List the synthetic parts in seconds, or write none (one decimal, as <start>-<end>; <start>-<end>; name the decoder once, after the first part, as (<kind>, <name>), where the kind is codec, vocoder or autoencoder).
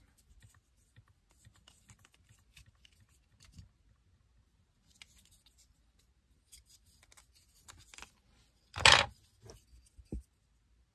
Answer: none